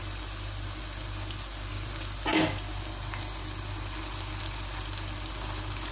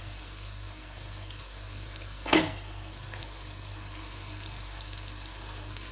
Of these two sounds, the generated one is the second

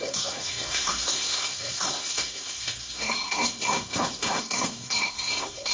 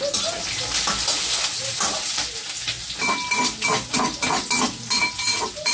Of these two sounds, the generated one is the first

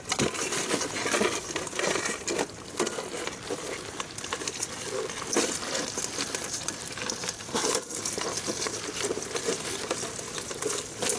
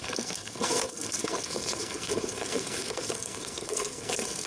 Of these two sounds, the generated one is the second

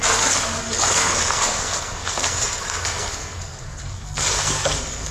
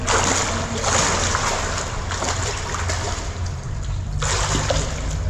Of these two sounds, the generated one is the first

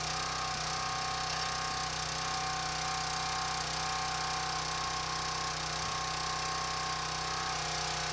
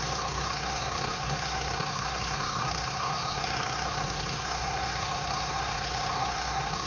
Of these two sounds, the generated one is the second